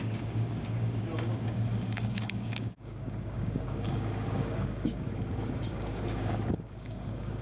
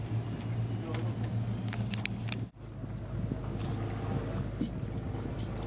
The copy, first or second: first